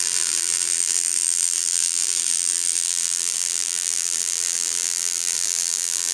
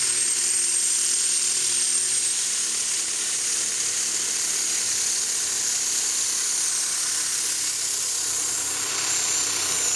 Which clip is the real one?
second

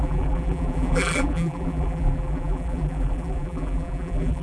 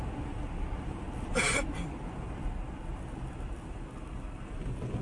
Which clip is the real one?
second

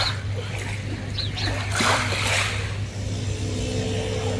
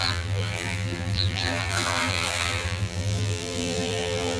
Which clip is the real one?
first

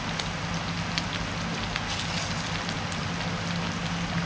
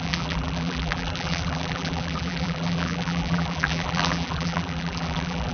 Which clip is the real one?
first